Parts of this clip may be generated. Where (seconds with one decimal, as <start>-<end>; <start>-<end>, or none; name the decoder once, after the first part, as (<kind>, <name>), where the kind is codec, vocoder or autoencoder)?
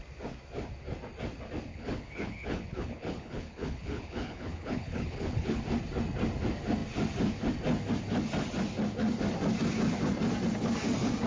1.7-5.6 (codec, HILCodec)